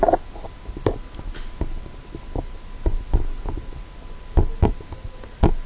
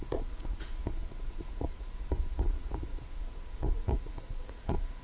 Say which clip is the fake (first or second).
second